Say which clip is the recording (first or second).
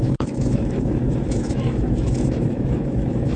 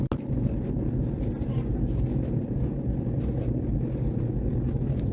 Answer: second